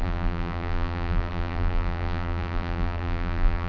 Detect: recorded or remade remade